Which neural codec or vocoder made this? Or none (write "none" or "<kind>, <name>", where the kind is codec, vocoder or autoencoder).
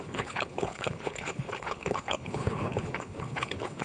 codec, HILCodec